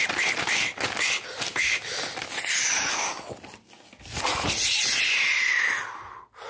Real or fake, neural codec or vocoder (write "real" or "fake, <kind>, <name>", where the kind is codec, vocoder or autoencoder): real